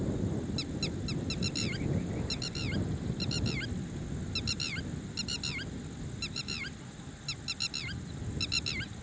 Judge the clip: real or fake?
real